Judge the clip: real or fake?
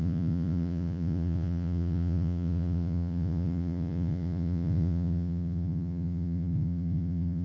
fake